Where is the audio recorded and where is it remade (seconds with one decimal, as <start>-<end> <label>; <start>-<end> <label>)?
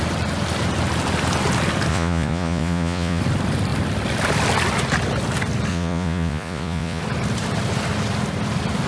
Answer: 0.0-1.9 recorded; 1.9-3.2 remade; 3.2-5.7 recorded; 5.7-7.0 remade; 7.0-8.9 recorded